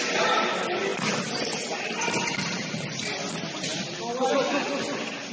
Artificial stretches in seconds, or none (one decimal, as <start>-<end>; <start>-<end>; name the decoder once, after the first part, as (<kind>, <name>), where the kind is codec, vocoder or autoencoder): none